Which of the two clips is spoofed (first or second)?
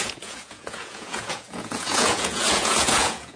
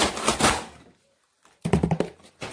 first